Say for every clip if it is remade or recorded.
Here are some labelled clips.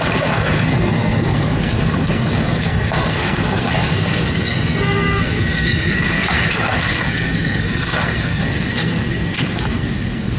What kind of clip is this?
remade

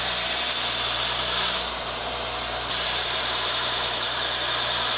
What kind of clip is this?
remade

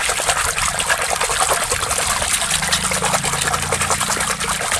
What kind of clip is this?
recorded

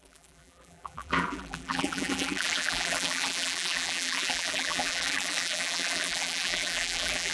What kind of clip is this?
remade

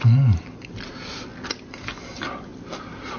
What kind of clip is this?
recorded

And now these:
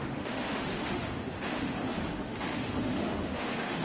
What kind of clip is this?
remade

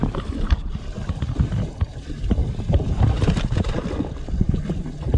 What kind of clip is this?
recorded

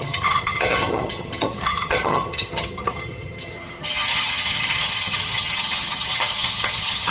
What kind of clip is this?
remade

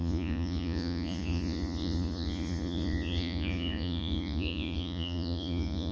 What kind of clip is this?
remade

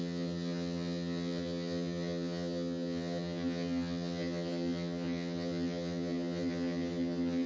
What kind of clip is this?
remade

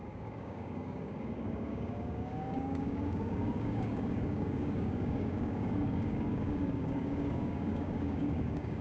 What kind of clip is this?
remade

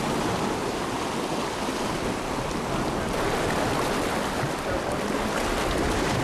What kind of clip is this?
recorded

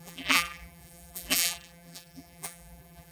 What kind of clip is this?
remade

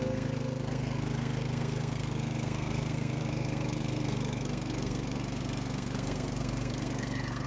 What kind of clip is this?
remade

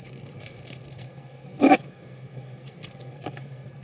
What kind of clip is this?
remade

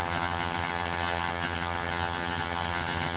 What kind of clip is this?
remade